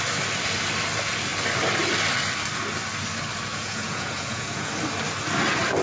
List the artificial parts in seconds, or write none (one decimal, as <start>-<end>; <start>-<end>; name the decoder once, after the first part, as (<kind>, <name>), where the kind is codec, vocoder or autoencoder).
3.5-4.7 (vocoder, Vocos)